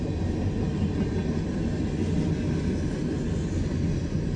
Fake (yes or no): no